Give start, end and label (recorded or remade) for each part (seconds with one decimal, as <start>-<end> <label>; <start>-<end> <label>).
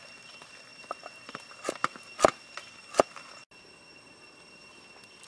0.0-5.3 recorded